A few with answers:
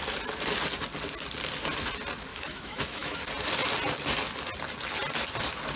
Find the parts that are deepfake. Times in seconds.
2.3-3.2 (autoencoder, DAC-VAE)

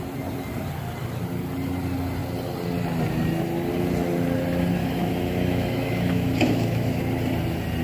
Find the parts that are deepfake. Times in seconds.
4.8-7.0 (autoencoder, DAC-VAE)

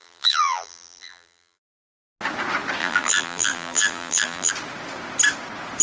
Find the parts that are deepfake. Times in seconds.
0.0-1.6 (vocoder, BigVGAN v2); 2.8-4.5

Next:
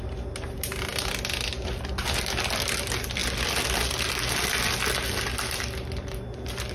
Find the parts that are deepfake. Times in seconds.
none

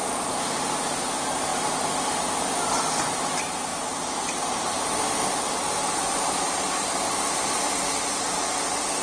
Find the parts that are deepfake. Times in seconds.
0.0-1.1 (vocoder, BigVGAN v2)